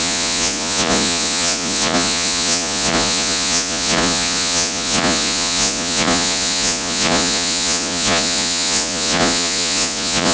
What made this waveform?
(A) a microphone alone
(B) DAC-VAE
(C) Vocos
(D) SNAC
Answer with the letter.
C